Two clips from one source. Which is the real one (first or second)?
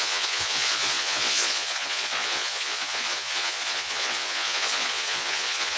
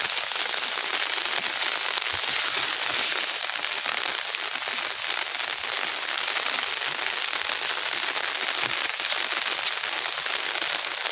second